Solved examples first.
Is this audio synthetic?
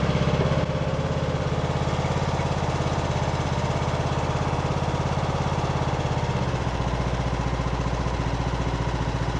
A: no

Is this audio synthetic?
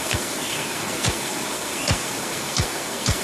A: yes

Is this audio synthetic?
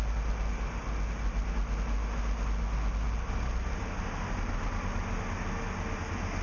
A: no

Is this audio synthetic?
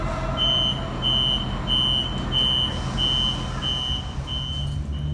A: no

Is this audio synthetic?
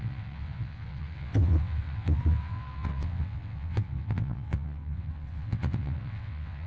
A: yes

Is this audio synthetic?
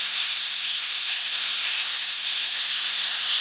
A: yes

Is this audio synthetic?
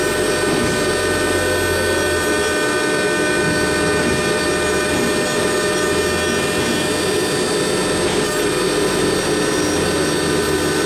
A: no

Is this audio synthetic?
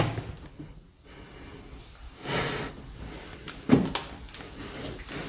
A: no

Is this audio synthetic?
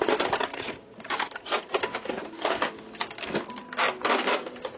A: no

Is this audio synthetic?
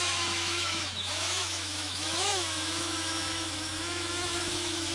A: yes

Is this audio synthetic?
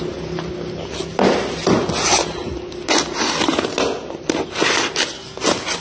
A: no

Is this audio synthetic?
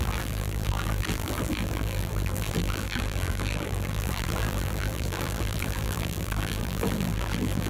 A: yes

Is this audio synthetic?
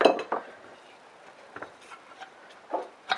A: no